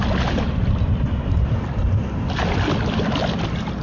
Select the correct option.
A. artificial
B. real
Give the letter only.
B